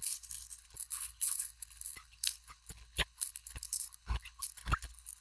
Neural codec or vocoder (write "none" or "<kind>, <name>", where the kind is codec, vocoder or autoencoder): codec, HILCodec